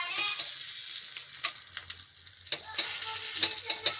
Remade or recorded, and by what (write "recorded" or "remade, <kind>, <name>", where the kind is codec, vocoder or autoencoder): recorded